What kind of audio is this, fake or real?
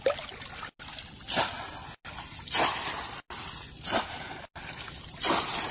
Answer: real